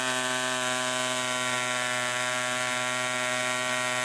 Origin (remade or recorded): recorded